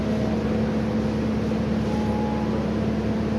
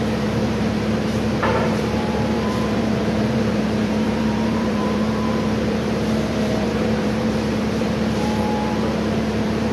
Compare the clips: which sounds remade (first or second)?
second